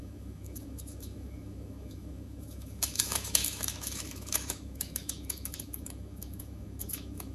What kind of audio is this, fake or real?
fake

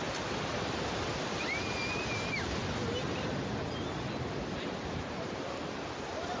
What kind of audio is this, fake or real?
real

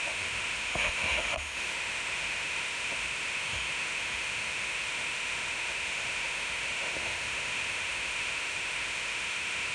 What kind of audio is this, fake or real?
fake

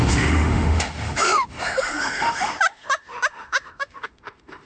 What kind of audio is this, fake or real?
fake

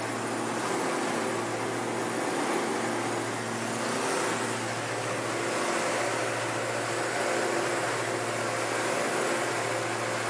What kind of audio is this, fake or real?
real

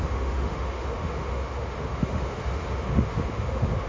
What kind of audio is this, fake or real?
fake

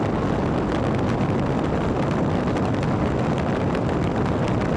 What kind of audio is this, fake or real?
real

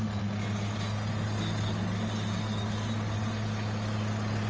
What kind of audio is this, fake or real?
real